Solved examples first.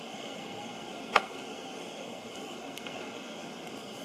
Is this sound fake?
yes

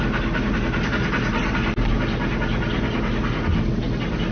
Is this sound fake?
no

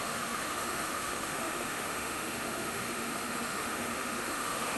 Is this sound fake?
yes